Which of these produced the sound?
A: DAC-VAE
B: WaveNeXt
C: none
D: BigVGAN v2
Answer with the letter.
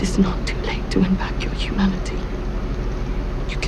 C